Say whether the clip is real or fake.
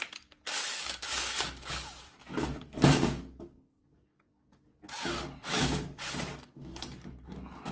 fake